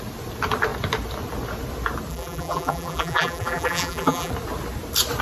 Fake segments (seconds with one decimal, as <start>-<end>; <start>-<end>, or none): 2.1-4.3